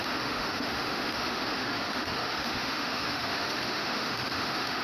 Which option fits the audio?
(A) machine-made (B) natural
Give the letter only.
A